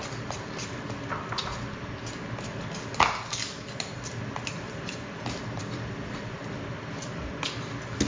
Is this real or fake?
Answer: real